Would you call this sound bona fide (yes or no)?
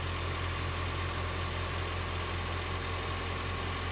yes